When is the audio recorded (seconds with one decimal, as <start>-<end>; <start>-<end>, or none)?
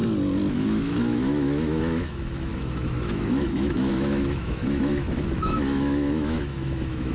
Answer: 0.0-0.5